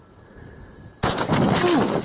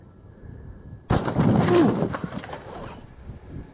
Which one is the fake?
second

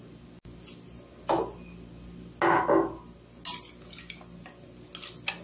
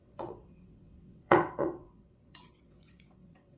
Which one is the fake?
second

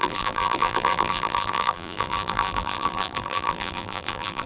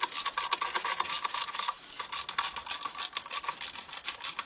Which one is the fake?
first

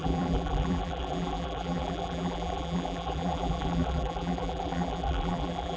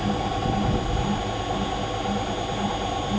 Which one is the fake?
first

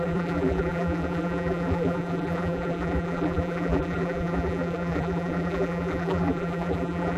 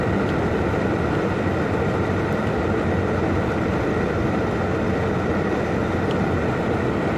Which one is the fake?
first